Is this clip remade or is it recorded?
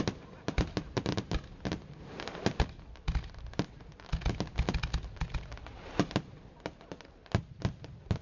recorded